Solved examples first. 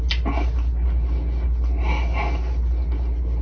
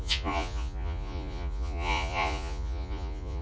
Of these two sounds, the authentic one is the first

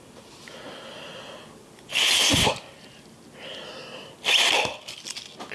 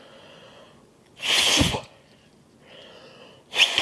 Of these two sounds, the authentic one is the first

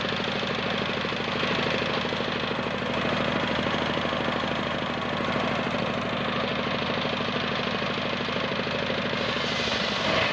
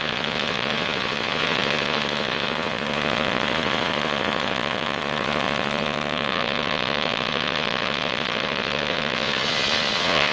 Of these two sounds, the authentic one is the first